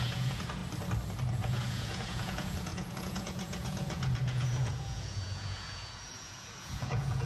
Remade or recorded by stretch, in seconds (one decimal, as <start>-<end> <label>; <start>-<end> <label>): 0.0-0.6 remade; 0.6-1.3 recorded; 1.3-7.3 remade